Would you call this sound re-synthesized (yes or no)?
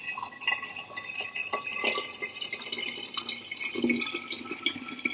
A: no